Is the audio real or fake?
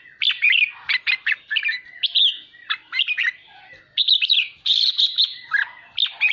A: real